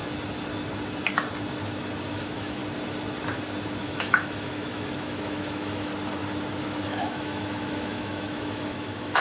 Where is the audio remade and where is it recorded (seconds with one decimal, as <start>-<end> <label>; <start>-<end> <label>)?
0.0-2.1 recorded; 2.1-2.6 remade; 2.6-3.8 recorded; 3.8-5.9 remade; 5.9-6.6 recorded; 6.6-9.2 remade